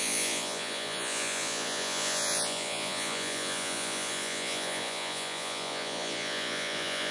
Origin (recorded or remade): remade